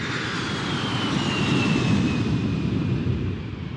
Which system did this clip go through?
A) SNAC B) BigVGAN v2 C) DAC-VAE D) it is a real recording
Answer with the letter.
D